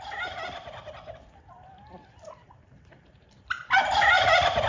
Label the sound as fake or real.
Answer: fake